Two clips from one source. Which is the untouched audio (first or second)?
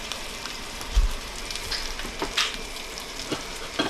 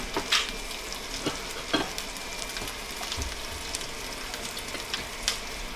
second